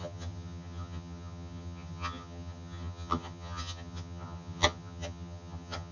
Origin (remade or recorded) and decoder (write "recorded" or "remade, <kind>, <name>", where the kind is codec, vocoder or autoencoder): remade, vocoder, HiFi-GAN